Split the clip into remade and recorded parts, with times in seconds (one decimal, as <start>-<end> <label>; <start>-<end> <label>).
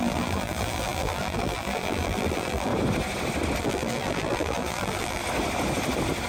0.0-2.7 remade; 2.7-3.6 recorded; 3.6-5.2 remade; 5.2-6.3 recorded